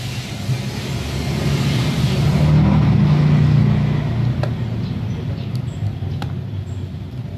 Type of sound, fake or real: real